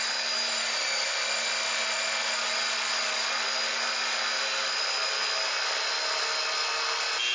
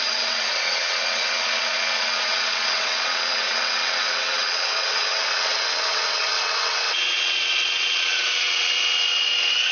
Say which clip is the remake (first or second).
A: second